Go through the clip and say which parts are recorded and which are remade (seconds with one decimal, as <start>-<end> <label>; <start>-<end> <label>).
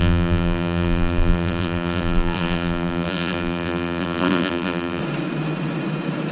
0.0-5.0 remade; 5.0-6.3 recorded